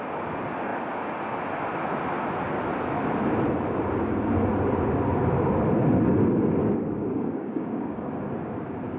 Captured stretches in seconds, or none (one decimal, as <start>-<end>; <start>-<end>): 0.0-6.6; 8.1-9.0